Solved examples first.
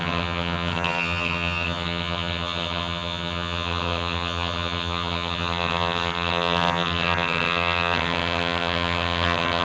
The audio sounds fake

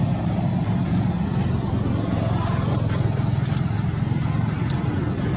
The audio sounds real